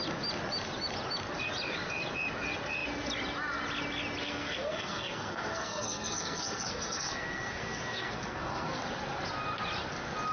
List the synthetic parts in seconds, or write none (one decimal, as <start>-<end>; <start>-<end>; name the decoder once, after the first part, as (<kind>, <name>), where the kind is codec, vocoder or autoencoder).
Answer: 4.2-8.8 (codec, SNAC)